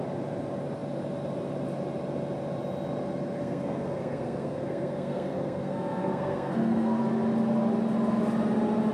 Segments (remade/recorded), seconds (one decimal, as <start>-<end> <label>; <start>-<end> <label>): 0.0-3.4 recorded; 3.4-7.0 remade; 7.0-8.9 recorded